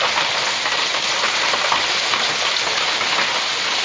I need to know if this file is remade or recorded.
recorded